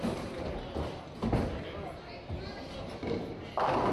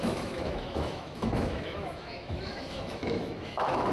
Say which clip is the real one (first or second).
first